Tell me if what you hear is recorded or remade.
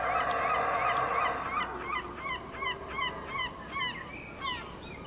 recorded